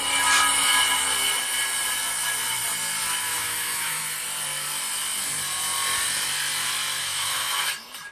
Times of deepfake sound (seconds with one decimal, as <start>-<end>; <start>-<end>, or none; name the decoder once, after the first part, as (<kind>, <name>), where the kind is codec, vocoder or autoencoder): 3.3-4.0 (autoencoder, DAC-VAE); 7.0-7.6